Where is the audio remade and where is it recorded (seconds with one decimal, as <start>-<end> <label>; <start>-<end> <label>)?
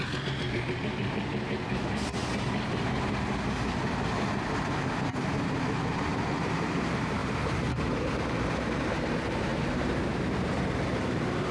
0.0-2.2 remade; 2.2-4.4 recorded; 4.4-9.5 remade; 9.5-11.5 recorded